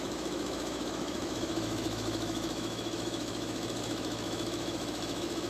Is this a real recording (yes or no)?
no